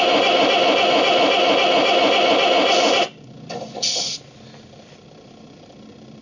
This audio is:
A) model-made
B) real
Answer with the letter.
B